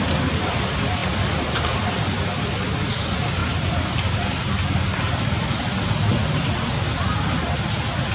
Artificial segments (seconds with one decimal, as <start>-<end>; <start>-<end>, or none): 1.0-2.0; 3.4-5.6; 6.2-6.7